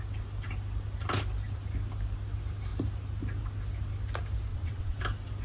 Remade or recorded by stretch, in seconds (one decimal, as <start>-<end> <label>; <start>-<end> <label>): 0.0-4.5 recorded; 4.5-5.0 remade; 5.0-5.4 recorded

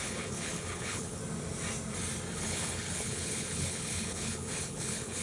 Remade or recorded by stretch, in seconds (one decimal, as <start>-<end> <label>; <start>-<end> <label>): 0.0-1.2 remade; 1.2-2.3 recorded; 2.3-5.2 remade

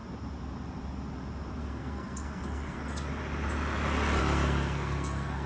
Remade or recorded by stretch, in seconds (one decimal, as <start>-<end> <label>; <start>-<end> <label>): 0.0-1.6 recorded; 1.6-3.1 remade; 3.1-4.2 recorded; 4.2-5.5 remade

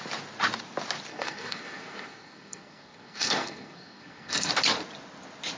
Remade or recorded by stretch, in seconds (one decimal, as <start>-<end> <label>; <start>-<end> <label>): 0.0-1.1 recorded; 1.1-4.5 remade; 4.5-5.6 recorded